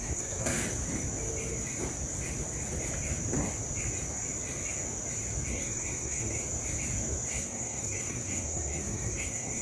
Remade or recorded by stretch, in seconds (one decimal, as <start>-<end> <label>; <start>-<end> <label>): 0.0-0.6 remade; 0.6-5.5 recorded; 5.5-6.4 remade; 6.4-7.3 recorded; 7.3-9.6 remade